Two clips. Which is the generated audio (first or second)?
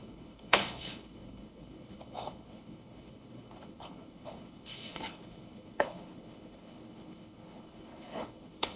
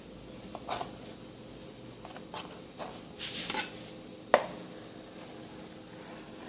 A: first